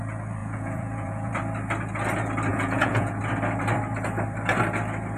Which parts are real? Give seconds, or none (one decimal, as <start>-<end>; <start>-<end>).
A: 0.0-0.4; 1.3-2.5; 3.2-5.2